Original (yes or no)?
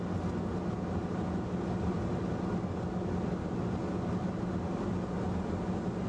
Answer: yes